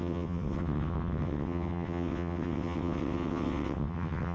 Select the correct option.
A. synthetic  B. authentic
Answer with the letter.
A